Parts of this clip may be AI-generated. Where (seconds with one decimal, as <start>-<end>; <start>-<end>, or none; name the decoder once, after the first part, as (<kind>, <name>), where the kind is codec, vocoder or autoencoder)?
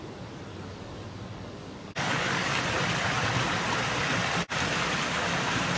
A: 0.5-2.6 (codec, DAC)